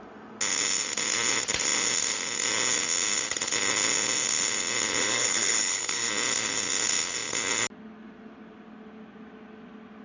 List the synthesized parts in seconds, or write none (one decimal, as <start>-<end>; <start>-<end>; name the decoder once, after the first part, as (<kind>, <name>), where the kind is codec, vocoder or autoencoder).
5.0-6.1 (codec, SNAC)